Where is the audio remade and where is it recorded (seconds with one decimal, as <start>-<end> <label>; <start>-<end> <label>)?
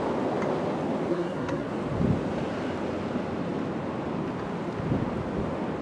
0.0-1.1 recorded; 1.1-1.7 remade; 1.7-5.8 recorded